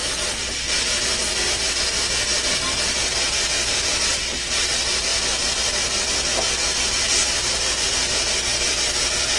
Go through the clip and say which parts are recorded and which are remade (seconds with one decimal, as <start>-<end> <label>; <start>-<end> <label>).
0.0-9.4 recorded